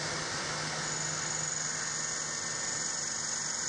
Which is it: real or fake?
real